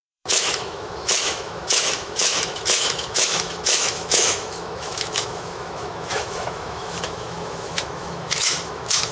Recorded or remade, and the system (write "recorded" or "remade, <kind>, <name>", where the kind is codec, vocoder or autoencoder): remade, autoencoder, DAC-VAE